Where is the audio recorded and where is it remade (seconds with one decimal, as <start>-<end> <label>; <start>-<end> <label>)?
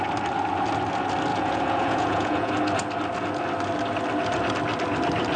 0.0-1.3 recorded; 1.3-2.5 remade; 2.5-5.4 recorded